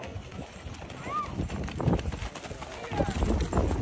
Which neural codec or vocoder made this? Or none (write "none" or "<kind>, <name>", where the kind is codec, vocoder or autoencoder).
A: none